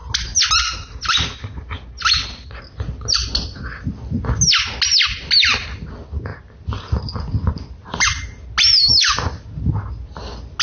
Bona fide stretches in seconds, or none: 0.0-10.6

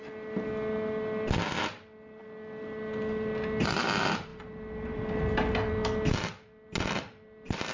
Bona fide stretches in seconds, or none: 0.0-7.7

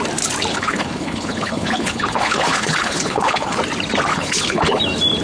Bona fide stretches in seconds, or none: 0.0-0.5; 3.6-4.1; 4.8-5.2

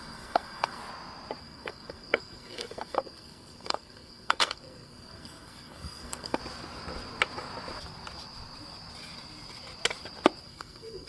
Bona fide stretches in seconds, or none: 0.8-1.4; 6.4-10.4

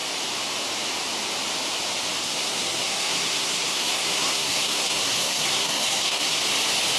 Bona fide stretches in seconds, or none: 0.0-2.2; 6.4-7.0

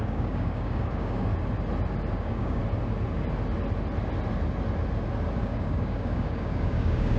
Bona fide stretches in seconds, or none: 1.3-2.1; 2.6-5.4

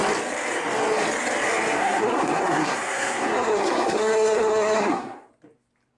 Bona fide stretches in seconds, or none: 0.0-1.8; 5.3-6.0

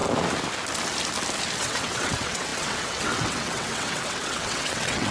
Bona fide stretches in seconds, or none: 0.0-1.6